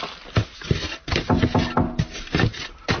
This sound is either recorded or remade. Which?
recorded